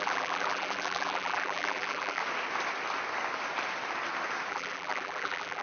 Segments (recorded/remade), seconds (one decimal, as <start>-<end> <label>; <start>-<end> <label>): 0.0-2.2 remade; 2.2-4.5 recorded; 4.5-5.6 remade